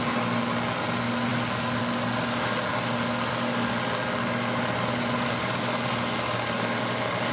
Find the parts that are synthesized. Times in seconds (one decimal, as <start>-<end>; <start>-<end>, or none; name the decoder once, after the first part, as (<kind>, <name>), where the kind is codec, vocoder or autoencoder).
none